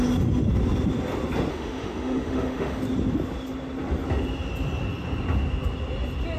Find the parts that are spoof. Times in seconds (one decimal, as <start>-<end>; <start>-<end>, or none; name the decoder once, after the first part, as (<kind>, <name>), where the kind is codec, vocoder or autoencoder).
1.5-2.8 (autoencoder, DAC-VAE)